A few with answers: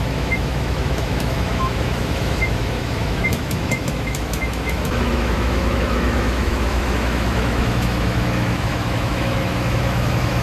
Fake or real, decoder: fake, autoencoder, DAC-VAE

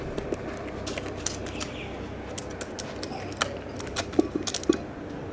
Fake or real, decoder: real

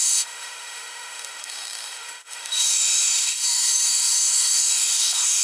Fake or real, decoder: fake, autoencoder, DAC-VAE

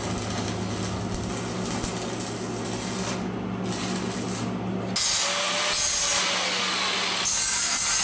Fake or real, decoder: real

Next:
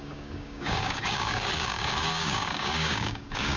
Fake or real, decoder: fake, codec, DAC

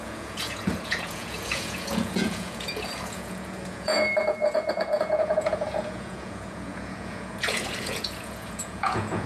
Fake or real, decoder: fake, vocoder, Vocos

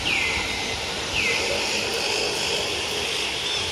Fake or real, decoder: real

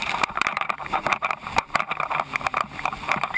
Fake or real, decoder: fake, vocoder, BigVGAN v2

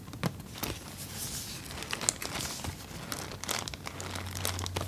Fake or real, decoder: real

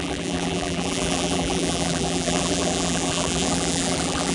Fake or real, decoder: fake, vocoder, BigVGAN v2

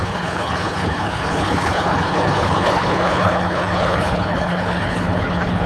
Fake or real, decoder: fake, codec, HILCodec